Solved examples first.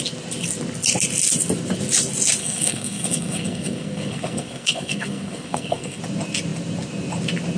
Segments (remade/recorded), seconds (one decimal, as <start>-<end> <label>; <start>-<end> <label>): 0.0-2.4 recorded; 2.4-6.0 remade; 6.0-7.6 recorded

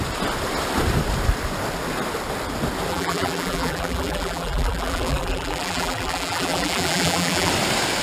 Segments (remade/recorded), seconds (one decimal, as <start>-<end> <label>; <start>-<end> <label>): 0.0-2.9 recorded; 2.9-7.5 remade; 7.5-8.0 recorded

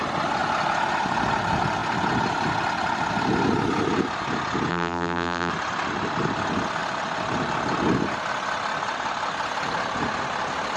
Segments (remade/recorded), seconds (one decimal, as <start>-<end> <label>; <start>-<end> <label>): 0.0-4.7 recorded; 4.7-5.5 remade; 5.5-10.8 recorded